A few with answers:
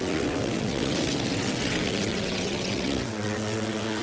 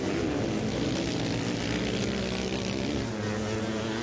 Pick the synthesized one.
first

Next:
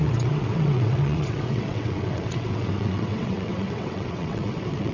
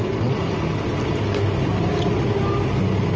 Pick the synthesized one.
first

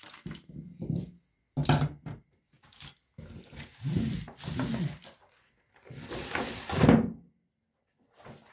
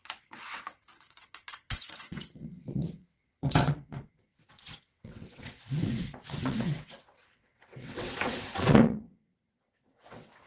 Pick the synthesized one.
second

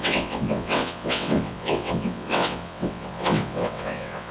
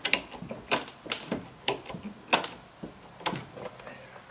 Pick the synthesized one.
first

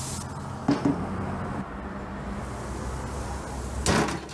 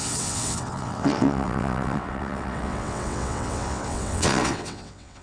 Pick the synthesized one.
second